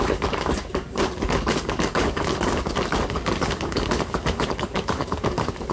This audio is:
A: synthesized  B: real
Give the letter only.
A